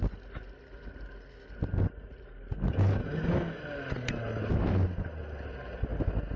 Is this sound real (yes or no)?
yes